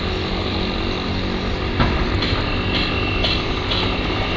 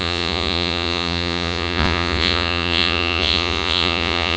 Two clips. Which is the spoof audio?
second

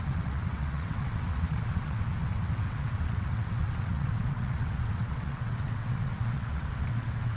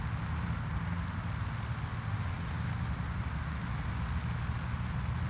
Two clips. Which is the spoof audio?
first